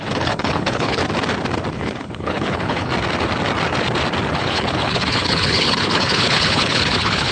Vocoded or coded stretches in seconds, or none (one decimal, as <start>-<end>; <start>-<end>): 0.0-1.0; 1.7-2.9; 4.3-7.3

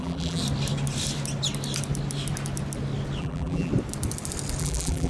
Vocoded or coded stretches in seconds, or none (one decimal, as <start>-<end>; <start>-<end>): 0.0-0.4; 3.2-3.7; 4.6-5.1

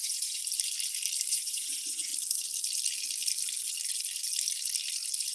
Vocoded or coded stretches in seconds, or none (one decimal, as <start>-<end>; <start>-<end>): 0.0-0.4; 1.3-2.1

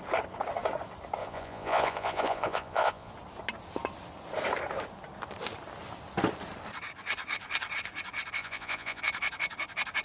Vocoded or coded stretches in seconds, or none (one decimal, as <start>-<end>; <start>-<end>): 1.2-3.1; 8.4-9.0

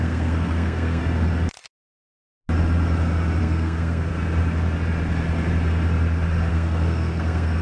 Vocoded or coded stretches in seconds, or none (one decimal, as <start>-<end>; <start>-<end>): 0.0-1.0; 3.4-4.1; 6.5-7.6